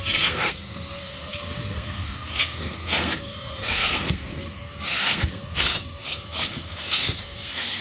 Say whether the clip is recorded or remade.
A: remade